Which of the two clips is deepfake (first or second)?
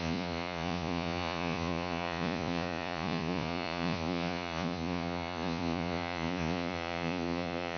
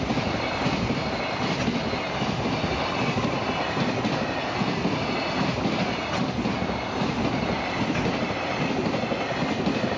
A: first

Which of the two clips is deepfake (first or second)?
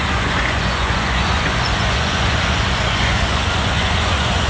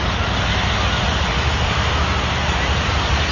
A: first